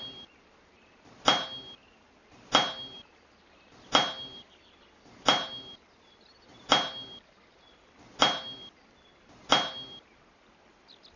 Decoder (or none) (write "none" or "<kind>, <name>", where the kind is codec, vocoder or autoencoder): none